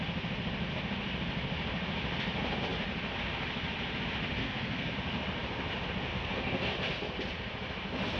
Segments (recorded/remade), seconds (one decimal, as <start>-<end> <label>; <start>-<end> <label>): 0.0-4.4 recorded; 4.4-4.9 remade; 4.9-6.1 recorded; 6.1-6.7 remade; 6.7-8.2 recorded